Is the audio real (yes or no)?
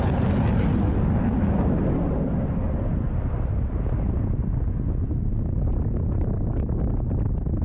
yes